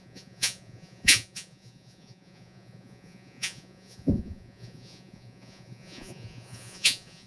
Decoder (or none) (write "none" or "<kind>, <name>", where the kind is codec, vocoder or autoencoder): vocoder, Vocos